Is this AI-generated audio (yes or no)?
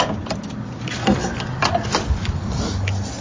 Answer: yes